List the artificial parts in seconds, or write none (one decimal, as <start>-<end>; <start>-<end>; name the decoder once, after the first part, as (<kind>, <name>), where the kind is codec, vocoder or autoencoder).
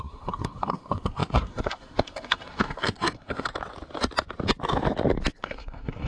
0.0-3.5 (codec, SNAC); 5.3-6.1